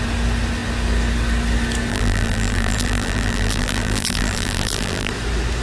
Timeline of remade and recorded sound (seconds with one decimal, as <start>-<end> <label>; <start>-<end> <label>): 0.0-1.9 recorded; 1.9-5.1 remade; 5.1-5.6 recorded